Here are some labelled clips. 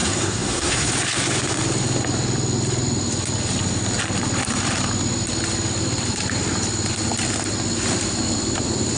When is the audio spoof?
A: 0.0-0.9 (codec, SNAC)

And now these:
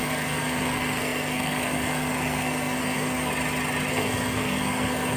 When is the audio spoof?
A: 0.0-3.3 (codec, SNAC); 3.9-5.2

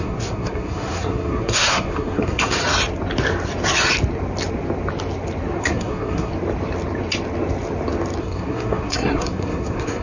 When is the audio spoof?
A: 0.0-2.6 (codec, SNAC); 5.6-6.3; 8.2-10.0

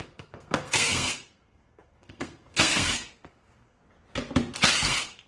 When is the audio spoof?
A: 0.0-3.8 (codec, SNAC); 4.7-5.3

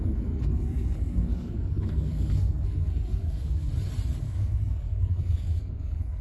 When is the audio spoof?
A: 0.0-3.7 (codec, SNAC); 4.2-6.2

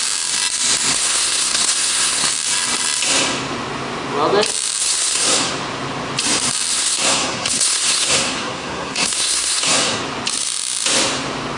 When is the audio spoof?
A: 0.9-2.3 (codec, SNAC); 4.8-5.5; 6.7-10.0